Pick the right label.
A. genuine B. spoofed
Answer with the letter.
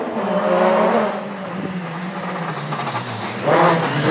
A